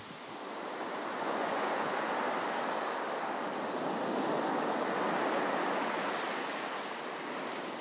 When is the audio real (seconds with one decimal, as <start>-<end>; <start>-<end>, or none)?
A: 0.0-1.1; 2.1-7.8